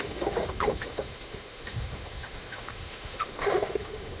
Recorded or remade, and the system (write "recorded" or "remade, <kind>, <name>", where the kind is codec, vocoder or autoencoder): remade, autoencoder, DAC-VAE